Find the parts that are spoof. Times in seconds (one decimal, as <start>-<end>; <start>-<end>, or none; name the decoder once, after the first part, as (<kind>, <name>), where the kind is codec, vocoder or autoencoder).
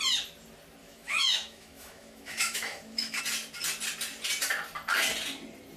0.8-3.2 (autoencoder, DAC-VAE)